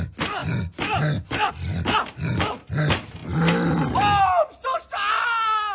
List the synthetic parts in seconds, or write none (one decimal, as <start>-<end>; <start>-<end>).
none